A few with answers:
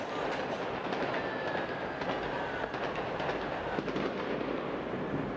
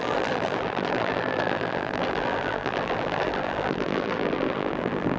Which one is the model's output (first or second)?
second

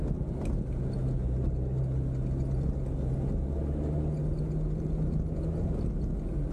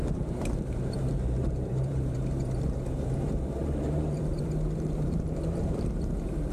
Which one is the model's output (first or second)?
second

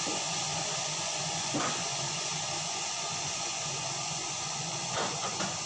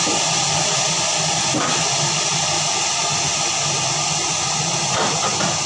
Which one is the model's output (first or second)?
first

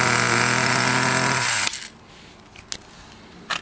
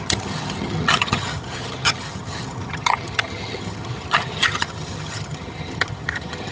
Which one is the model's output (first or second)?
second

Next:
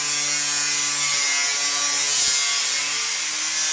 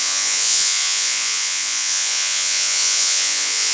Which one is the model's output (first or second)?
second